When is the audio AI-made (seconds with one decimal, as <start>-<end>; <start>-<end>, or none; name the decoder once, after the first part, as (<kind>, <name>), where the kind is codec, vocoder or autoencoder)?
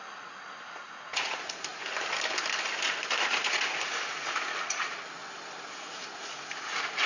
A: 0.0-1.7 (vocoder, Vocos); 3.2-5.2; 5.7-7.1